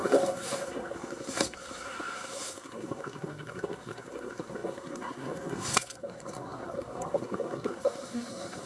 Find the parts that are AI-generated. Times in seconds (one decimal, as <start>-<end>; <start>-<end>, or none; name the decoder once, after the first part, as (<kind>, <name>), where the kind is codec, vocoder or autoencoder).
0.0-8.7 (codec, SNAC)